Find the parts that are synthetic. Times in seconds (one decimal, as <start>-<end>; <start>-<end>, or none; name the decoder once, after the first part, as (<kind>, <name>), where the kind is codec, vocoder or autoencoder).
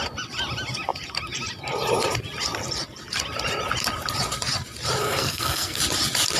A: 5.0-5.8 (codec, SNAC)